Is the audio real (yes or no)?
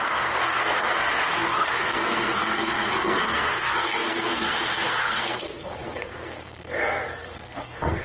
no